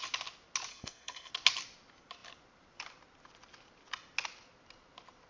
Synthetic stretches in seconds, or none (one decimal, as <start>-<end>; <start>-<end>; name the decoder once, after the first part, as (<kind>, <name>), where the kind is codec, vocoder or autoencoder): 0.7-1.3 (codec, SNAC)